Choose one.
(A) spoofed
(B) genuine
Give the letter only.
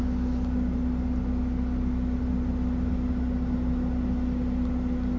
B